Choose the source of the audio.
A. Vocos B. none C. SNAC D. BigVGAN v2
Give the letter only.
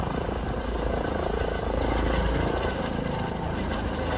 B